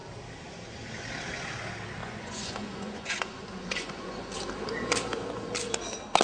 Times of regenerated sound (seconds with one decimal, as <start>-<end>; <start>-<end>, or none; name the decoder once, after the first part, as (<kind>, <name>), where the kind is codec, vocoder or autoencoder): 2.0-4.3 (vocoder, Vocos)